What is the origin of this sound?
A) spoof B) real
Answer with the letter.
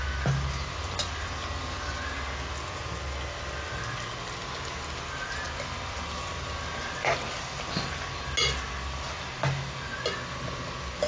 B